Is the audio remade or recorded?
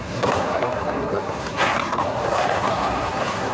remade